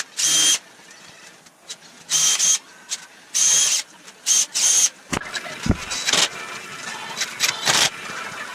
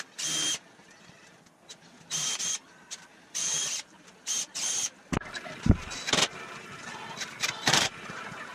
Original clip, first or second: first